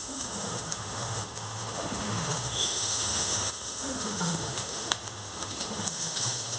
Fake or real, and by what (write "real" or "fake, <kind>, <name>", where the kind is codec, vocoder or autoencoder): fake, autoencoder, DAC-VAE